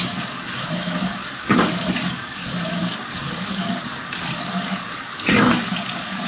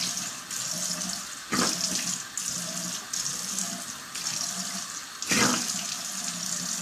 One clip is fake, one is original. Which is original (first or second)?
second